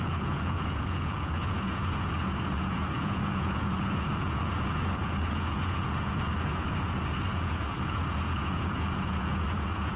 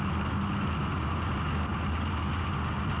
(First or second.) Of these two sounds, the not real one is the first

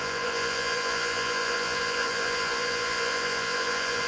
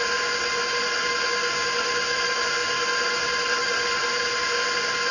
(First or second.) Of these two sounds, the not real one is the first